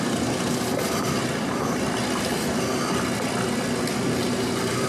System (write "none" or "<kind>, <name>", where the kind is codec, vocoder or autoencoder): none